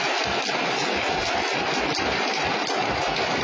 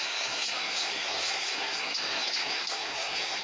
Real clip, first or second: first